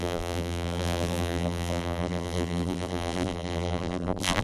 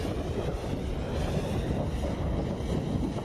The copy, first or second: first